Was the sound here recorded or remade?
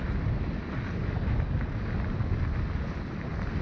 recorded